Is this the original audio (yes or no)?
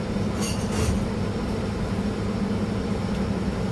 yes